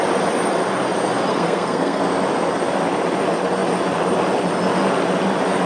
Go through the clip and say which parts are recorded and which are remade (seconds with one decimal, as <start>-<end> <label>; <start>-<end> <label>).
0.0-1.3 recorded; 1.3-2.0 remade; 2.0-5.7 recorded